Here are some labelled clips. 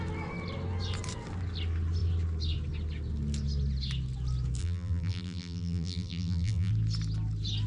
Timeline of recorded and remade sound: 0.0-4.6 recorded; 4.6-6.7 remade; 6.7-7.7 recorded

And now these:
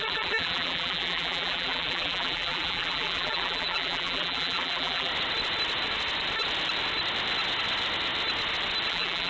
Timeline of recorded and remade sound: 0.0-5.1 remade; 5.1-8.9 recorded; 8.9-9.3 remade

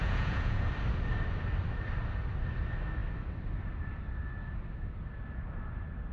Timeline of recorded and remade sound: 0.0-0.7 remade; 0.7-6.1 recorded